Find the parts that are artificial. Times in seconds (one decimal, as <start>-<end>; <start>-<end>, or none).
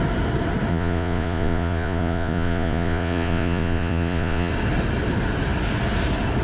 0.7-4.5